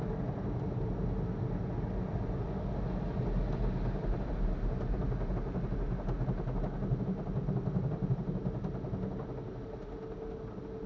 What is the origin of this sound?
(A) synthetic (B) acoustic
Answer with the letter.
B